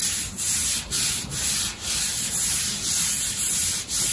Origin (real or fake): real